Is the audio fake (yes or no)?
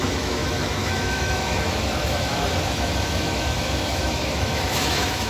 yes